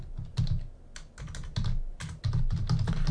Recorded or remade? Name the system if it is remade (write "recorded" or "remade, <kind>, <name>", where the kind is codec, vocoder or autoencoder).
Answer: recorded